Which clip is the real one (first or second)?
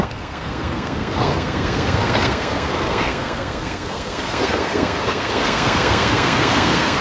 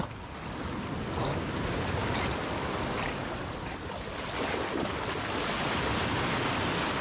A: second